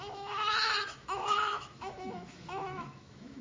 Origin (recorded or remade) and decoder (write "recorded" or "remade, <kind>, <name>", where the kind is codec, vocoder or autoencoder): remade, autoencoder, DAC-VAE